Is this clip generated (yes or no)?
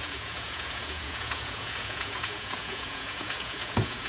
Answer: yes